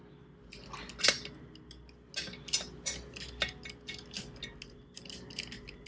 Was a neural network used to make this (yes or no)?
no